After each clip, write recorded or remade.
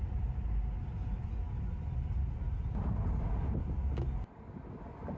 recorded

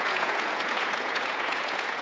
remade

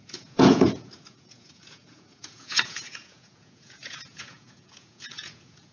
remade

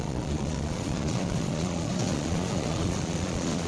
remade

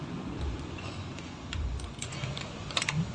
remade